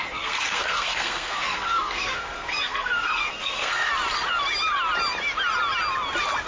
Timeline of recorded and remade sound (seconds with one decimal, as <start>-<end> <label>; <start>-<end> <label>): 0.0-3.9 remade; 3.9-6.5 recorded